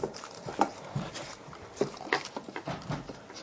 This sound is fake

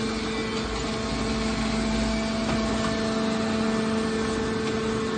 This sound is real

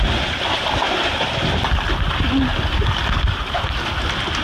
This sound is real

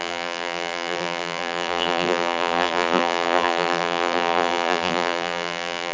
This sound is fake